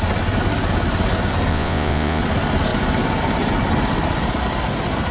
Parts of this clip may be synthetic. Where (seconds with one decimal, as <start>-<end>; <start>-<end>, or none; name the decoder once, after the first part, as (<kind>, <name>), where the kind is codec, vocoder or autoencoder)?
1.5-2.2 (vocoder, Vocos)